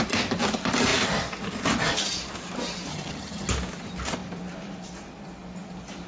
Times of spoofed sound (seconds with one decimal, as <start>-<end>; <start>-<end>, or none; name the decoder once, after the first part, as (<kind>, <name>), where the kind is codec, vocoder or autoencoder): 2.9-3.5 (vocoder, HiFi-GAN)